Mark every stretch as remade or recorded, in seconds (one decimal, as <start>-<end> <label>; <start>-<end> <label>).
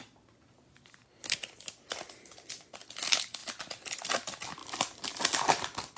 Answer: 0.0-6.0 recorded